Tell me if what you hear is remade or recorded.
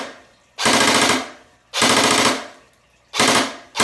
recorded